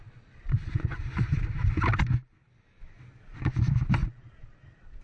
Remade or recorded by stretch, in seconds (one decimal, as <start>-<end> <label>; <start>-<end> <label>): 0.0-1.0 remade; 1.0-4.0 recorded; 4.0-5.0 remade